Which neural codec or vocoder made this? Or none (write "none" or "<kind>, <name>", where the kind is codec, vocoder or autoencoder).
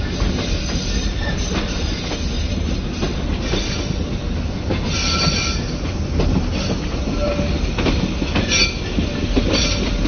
none